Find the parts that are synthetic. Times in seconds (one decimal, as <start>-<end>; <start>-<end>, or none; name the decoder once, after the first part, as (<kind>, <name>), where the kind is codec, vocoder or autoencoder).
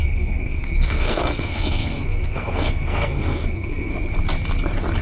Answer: 0.0-3.9 (codec, SNAC)